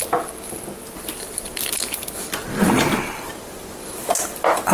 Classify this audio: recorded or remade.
recorded